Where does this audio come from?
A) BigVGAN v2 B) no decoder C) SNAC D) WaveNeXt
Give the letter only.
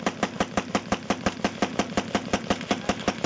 B